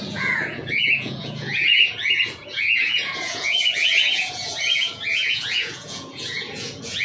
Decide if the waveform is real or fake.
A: fake